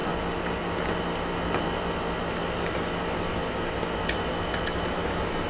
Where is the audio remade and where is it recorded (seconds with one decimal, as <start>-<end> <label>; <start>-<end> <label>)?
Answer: 0.0-5.5 recorded